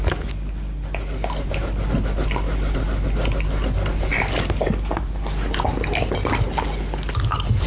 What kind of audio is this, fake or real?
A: real